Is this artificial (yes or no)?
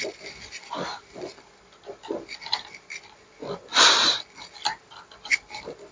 no